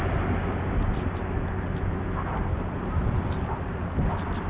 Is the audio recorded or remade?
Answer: recorded